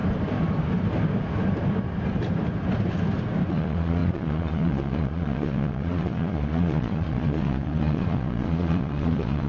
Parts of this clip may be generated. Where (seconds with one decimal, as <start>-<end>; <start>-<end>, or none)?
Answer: 3.5-9.5